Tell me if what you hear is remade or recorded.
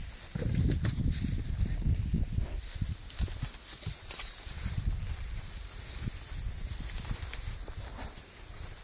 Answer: recorded